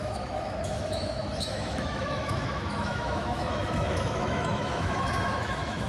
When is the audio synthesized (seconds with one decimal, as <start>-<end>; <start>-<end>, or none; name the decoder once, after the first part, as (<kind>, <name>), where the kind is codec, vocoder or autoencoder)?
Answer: 0.0-5.9 (autoencoder, DAC-VAE)